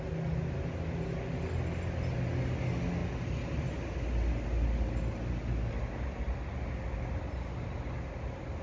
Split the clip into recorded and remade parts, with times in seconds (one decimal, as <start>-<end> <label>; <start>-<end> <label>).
0.0-8.6 recorded